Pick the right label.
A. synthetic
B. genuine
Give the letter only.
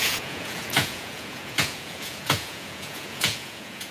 A